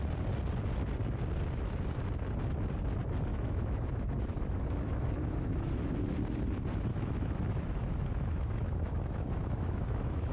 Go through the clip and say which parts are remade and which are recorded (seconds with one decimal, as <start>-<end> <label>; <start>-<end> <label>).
0.0-3.3 recorded; 3.3-6.1 remade; 6.1-6.9 recorded; 6.9-10.3 remade